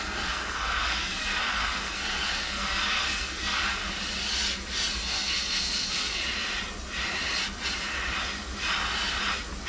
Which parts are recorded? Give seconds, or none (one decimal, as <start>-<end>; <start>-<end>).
3.8-4.9; 6.2-9.7

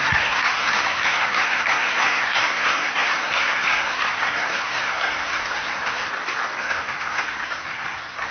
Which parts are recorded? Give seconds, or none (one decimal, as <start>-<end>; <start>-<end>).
6.1-6.6